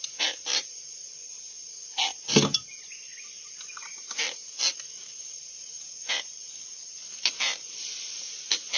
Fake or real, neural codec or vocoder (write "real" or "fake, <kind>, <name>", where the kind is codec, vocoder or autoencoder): fake, vocoder, BigVGAN v2